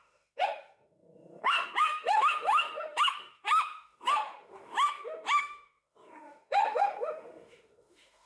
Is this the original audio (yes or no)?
no